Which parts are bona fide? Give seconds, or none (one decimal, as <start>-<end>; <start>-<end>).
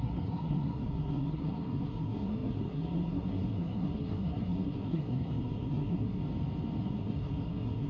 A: 6.2-6.8